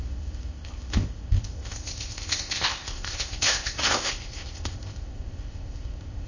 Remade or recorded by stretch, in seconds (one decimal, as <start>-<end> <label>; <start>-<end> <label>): 0.0-6.3 remade